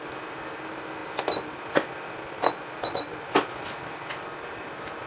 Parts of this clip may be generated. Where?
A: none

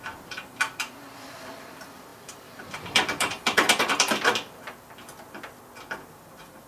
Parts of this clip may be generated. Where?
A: 0.0-6.7 (vocoder, BigVGAN v2)